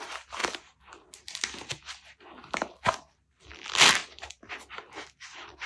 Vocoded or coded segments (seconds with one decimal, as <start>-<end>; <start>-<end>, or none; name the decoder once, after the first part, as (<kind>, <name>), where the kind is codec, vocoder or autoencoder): 4.0-4.5 (vocoder, BigVGAN v2)